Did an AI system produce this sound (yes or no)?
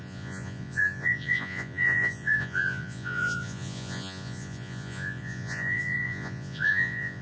yes